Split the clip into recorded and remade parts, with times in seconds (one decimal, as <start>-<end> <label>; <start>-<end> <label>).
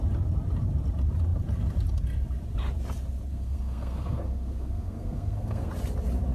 0.0-3.3 recorded; 3.3-5.7 remade; 5.7-6.3 recorded